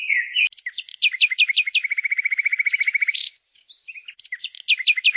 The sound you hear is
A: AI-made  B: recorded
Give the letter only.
B